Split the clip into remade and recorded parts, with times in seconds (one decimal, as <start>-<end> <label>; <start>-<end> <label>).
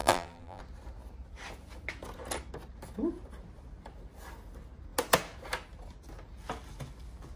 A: 0.0-0.6 remade; 0.6-7.4 recorded